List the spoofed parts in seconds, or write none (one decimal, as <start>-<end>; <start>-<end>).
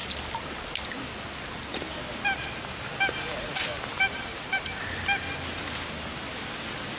3.9-4.8